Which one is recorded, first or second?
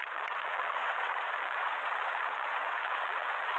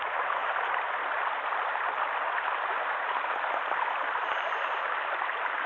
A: second